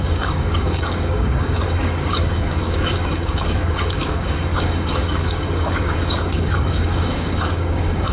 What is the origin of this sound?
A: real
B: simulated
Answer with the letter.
B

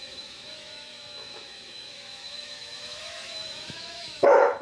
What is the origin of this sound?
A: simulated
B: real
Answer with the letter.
A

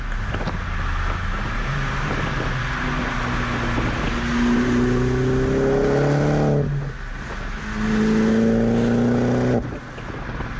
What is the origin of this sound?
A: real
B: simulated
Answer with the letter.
A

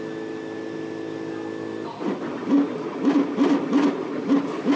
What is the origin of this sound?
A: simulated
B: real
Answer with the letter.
B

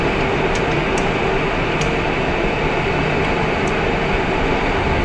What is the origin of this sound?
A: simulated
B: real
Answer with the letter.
B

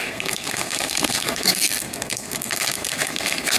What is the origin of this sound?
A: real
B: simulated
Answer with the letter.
B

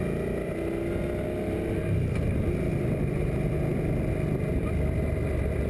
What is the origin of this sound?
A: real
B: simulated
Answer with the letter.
A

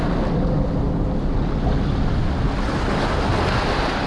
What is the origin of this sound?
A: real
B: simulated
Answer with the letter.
A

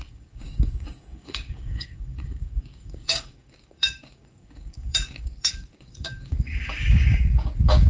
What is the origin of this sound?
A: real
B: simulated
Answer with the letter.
B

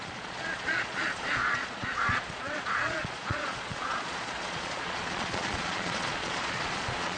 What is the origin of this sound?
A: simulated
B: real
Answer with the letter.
A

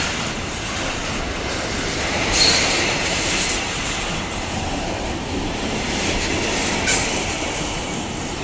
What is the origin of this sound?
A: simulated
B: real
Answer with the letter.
A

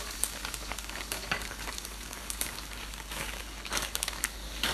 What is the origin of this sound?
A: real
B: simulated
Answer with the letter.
B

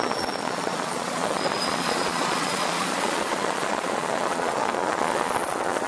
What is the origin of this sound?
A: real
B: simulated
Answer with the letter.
B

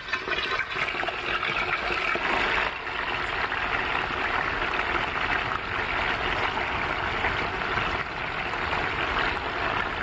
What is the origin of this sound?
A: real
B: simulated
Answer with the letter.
A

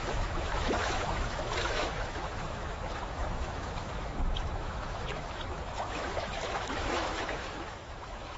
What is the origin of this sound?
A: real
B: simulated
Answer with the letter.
B